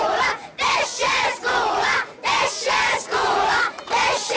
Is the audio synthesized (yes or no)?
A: yes